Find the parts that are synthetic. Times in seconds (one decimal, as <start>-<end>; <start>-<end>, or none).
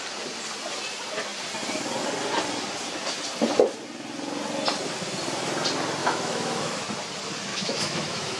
6.0-6.8; 7.5-8.4